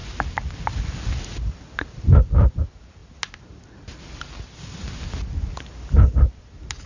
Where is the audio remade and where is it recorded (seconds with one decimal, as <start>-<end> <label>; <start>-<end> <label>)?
0.0-6.9 recorded